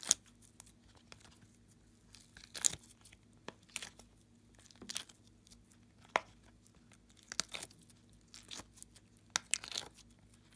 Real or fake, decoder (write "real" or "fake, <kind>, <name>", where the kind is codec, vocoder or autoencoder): real